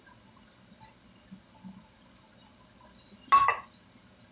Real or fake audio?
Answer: real